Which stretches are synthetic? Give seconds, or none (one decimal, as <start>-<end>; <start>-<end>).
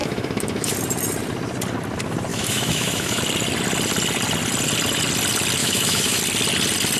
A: 0.0-0.7; 2.3-3.2; 5.6-6.2